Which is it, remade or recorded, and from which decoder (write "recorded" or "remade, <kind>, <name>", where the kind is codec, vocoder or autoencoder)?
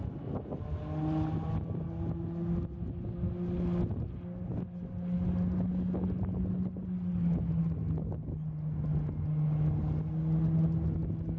recorded